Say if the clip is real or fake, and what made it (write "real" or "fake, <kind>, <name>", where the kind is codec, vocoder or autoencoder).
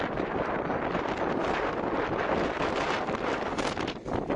real